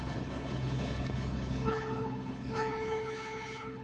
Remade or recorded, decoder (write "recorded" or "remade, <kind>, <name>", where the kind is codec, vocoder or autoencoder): remade, codec, HILCodec